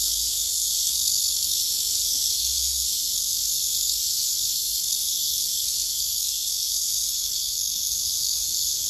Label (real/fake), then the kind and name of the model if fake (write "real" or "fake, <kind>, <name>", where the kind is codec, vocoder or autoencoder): fake, codec, SNAC